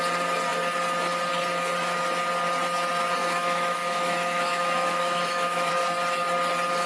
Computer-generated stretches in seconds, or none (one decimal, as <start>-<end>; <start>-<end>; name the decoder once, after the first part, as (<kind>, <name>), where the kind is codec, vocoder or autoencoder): 3.2-5.7 (autoencoder, DAC-VAE)